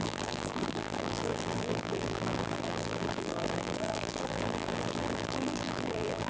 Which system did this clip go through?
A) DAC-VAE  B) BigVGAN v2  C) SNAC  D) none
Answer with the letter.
B